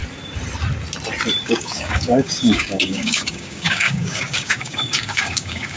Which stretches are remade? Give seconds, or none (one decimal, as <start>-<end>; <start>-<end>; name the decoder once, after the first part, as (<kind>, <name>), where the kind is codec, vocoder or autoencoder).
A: 1.4-5.8 (codec, DAC)